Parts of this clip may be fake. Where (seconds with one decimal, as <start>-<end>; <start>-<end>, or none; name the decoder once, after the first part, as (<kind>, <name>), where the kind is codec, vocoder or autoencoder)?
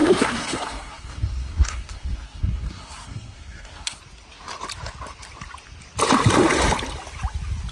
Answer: 0.0-4.0 (codec, SNAC)